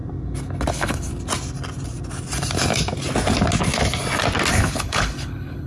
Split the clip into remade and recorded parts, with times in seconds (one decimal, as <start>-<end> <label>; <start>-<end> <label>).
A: 0.0-0.7 recorded; 0.7-1.1 remade; 1.1-4.5 recorded; 4.5-5.7 remade